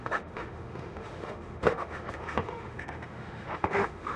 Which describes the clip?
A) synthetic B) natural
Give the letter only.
A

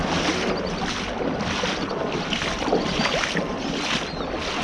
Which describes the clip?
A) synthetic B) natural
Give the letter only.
B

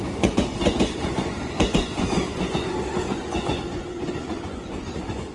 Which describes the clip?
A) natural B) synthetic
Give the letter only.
B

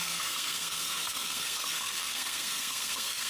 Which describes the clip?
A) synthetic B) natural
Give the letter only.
A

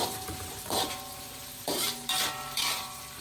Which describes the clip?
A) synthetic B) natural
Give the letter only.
A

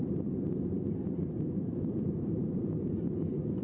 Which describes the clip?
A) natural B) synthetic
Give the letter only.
B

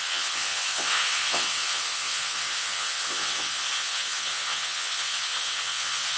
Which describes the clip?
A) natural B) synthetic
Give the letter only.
B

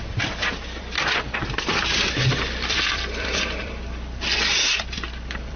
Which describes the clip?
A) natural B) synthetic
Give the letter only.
B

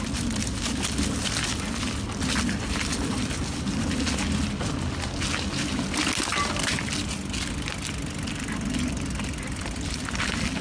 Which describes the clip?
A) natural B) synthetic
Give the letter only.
A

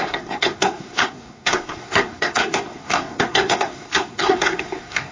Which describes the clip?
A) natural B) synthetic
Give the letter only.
B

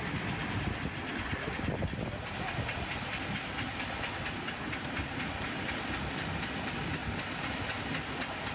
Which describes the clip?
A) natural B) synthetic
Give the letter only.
A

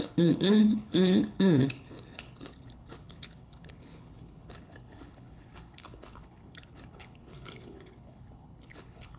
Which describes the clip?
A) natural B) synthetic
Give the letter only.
B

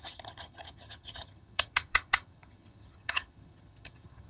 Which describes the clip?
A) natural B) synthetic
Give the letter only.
B